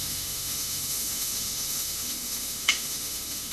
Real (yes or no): no